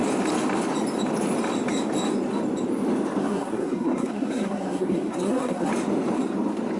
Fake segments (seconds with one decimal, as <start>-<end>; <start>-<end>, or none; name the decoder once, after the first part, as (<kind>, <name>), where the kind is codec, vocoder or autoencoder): 3.2-5.7 (codec, SNAC)